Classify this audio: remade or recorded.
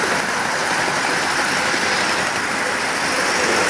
recorded